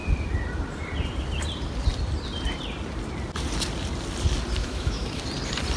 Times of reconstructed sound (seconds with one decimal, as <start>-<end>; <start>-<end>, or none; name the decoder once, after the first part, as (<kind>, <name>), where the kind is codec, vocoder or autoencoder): 4.6-5.2 (autoencoder, DAC-VAE)